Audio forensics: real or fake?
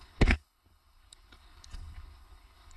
fake